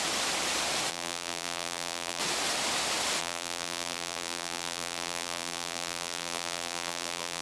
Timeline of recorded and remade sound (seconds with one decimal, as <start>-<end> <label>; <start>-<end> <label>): 0.0-0.9 recorded; 0.9-2.2 remade; 2.2-3.2 recorded; 3.2-7.4 remade